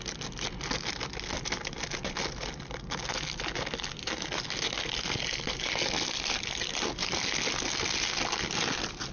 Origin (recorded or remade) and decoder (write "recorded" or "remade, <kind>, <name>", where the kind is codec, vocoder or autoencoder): recorded